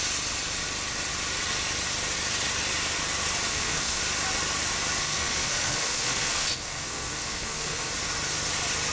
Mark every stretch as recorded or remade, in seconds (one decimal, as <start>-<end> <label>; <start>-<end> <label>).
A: 0.0-3.5 recorded; 3.5-4.0 remade; 4.0-5.0 recorded; 5.0-7.9 remade; 7.9-8.9 recorded